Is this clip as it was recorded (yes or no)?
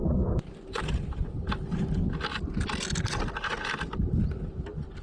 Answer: yes